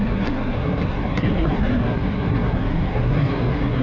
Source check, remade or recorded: remade